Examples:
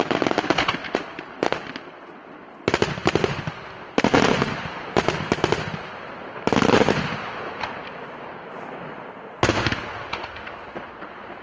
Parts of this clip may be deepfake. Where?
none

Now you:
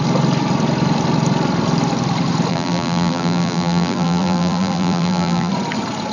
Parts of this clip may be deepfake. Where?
2.5-5.5 (vocoder, BigVGAN v2)

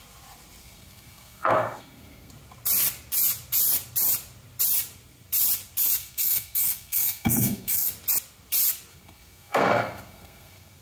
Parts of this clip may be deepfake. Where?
0.6-2.3 (codec, SNAC); 6.0-7.9; 8.9-10.8